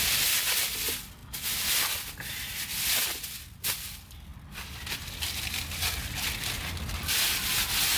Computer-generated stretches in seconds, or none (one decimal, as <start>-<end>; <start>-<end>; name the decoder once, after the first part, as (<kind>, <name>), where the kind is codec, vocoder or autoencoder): none